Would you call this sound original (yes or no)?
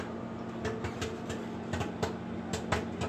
yes